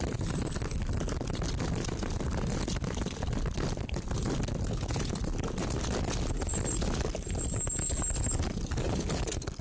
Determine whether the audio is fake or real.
real